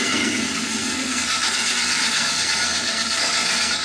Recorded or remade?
remade